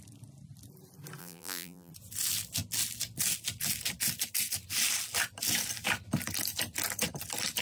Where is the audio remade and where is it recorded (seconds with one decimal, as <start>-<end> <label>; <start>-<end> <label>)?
0.0-1.2 recorded; 1.2-1.9 remade; 1.9-7.6 recorded